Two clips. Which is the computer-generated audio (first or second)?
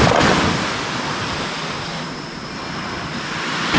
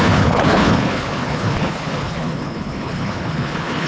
second